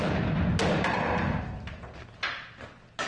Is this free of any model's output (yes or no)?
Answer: yes